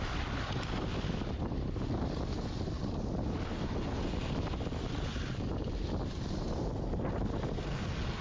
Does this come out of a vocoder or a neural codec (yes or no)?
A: no